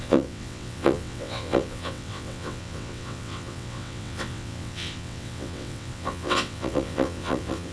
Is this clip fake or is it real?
fake